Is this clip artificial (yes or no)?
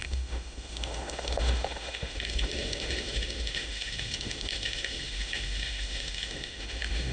yes